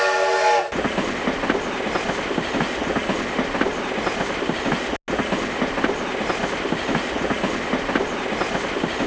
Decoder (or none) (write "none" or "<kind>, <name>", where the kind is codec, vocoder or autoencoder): none